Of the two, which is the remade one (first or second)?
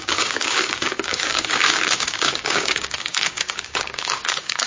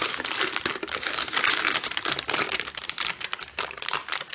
first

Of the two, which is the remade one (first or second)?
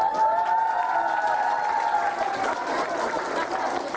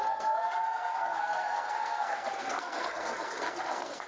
second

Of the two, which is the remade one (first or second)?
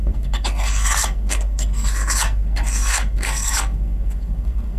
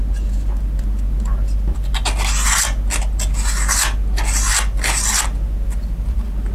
first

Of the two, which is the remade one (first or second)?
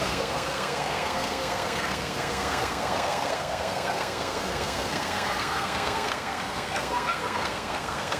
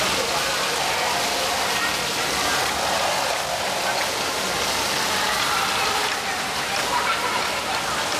first